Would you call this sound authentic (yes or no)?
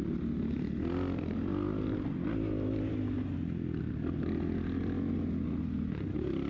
yes